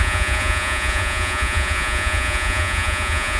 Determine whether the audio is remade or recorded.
remade